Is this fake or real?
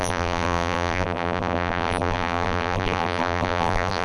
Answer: fake